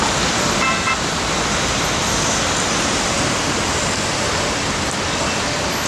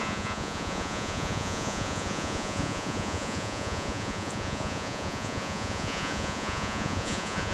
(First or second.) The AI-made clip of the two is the second